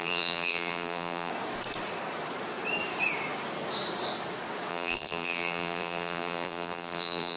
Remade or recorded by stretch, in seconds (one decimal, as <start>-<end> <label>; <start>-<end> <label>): 0.0-1.3 remade; 1.3-4.7 recorded; 4.7-7.4 remade